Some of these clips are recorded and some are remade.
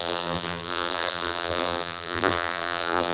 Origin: remade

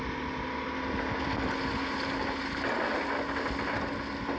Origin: recorded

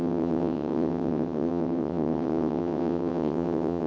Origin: remade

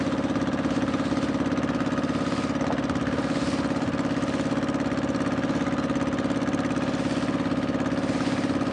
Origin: recorded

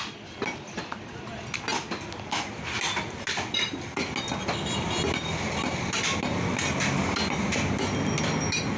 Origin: recorded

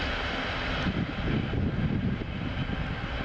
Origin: recorded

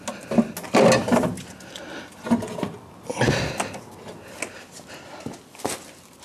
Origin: recorded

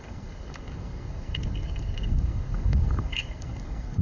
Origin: remade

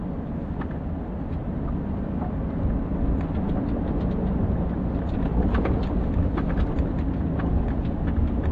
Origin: remade